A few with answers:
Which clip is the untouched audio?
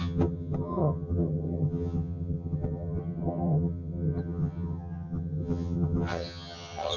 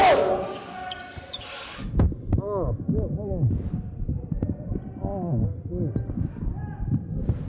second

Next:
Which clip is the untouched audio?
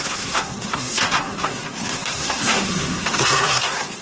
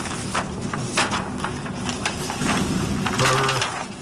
second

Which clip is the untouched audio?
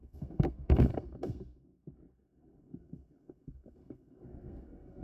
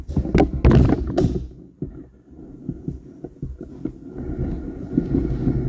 second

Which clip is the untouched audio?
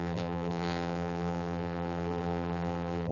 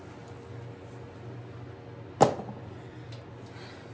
second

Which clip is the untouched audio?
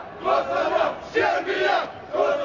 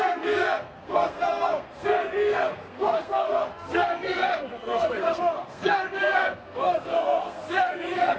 first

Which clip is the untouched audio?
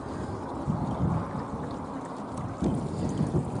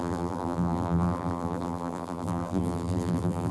first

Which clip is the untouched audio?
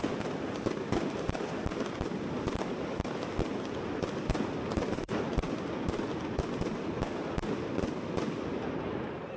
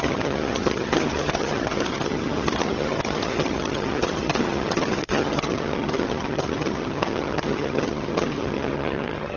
first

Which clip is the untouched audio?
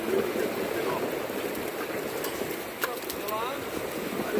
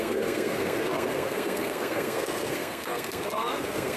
first